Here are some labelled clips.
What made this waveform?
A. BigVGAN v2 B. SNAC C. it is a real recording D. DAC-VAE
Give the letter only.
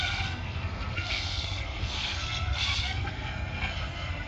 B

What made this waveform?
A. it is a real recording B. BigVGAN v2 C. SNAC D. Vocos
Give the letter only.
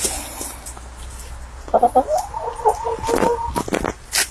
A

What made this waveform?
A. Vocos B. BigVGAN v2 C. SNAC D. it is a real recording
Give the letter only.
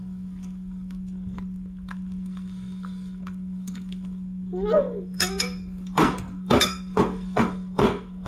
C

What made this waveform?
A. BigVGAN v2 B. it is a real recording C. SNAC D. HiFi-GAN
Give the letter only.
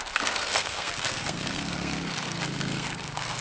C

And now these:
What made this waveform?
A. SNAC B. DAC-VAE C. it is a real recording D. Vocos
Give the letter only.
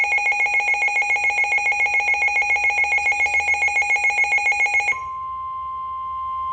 C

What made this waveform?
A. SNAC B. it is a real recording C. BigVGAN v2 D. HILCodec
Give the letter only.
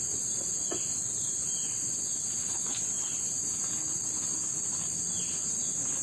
B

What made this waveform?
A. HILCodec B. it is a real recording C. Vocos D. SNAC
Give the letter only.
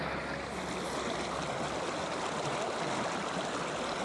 B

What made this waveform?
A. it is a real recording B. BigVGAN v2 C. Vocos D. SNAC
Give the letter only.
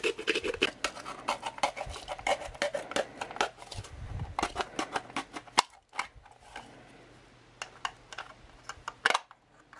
A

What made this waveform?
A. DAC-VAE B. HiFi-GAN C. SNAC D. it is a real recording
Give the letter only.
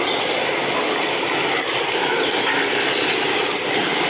D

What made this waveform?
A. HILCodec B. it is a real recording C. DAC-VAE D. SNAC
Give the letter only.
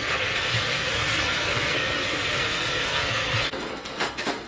D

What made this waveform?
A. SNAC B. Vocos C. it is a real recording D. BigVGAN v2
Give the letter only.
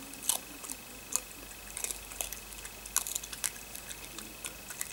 C